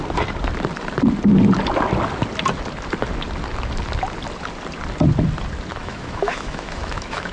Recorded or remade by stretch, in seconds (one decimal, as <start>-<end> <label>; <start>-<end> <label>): 0.0-5.8 recorded; 5.8-7.3 remade